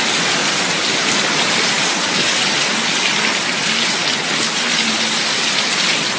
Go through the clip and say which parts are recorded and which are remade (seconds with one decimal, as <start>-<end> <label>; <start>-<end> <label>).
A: 0.0-6.2 recorded